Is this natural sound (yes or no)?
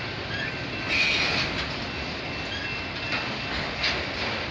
yes